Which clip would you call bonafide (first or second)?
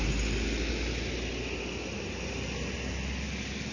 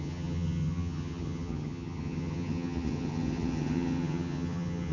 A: first